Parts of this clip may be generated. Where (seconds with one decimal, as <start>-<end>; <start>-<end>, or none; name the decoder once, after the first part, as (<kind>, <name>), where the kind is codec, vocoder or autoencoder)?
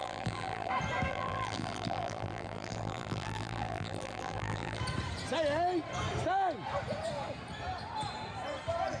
0.0-0.7 (vocoder, BigVGAN v2); 1.1-4.8